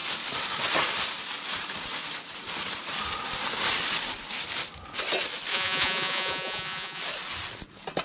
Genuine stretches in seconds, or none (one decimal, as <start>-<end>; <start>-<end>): 0.0-5.5; 7.0-8.0